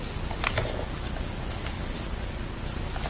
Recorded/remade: recorded